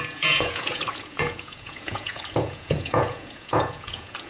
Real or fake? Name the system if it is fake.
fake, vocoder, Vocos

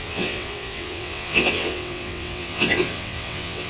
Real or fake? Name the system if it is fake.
fake, vocoder, WaveNeXt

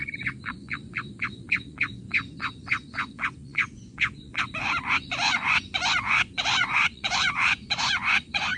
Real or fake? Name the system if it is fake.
fake, vocoder, Vocos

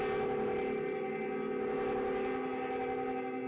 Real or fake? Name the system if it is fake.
real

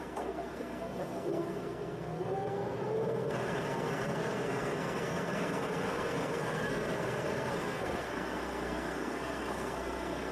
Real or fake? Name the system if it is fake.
fake, codec, SNAC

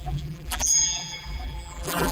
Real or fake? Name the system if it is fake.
fake, vocoder, BigVGAN v2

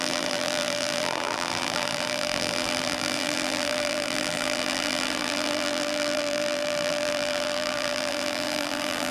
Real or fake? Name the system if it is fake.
fake, vocoder, BigVGAN v2